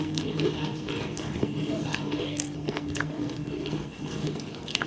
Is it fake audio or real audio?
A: fake